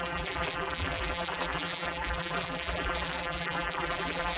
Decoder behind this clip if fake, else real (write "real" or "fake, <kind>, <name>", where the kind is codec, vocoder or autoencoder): fake, vocoder, BigVGAN v2